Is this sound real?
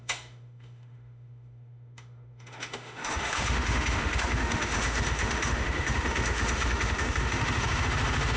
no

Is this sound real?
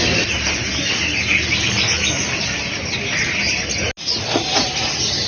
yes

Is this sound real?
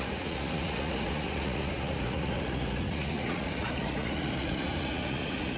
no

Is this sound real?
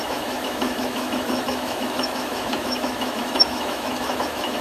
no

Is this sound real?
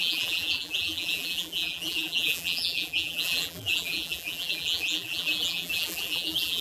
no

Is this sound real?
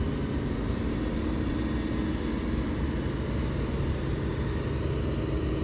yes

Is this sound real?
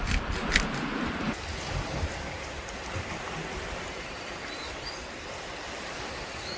yes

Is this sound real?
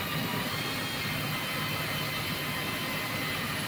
yes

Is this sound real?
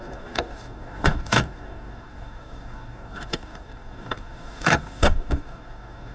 no